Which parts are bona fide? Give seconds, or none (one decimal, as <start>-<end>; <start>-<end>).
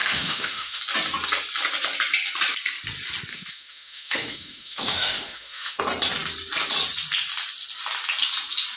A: 0.8-3.3; 5.8-8.8